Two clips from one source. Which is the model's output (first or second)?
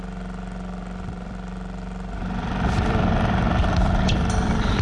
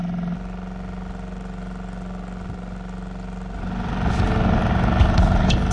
first